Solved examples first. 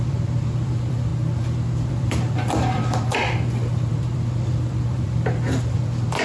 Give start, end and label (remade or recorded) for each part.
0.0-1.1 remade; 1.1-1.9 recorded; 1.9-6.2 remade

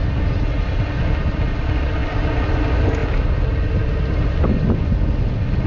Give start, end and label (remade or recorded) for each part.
0.0-5.7 recorded

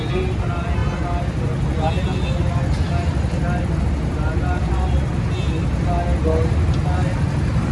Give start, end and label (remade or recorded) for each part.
0.0-7.7 recorded